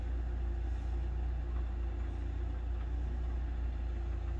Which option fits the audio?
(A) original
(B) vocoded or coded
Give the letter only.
A